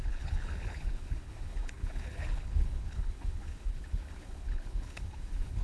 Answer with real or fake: fake